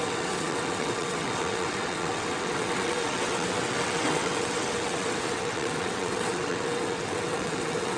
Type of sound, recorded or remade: remade